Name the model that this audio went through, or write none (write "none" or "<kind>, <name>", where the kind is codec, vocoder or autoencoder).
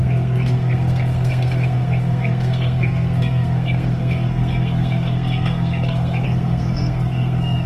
codec, SNAC